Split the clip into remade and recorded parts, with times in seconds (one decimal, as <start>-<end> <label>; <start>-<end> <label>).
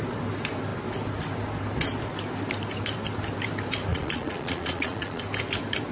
0.0-3.9 recorded; 3.9-5.2 remade; 5.2-5.9 recorded